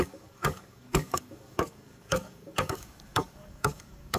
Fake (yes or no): yes